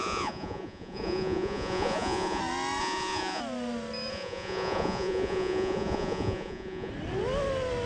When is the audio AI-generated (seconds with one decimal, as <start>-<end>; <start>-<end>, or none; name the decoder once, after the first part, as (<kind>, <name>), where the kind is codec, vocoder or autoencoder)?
0.0-2.4 (vocoder, Vocos); 2.8-3.4; 4.1-6.9